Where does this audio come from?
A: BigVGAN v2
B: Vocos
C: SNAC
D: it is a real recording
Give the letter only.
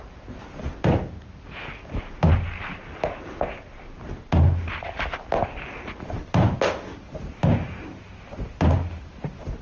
D